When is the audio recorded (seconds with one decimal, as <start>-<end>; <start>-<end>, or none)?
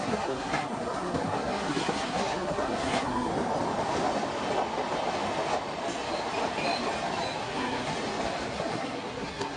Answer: 3.3-7.4; 7.9-8.5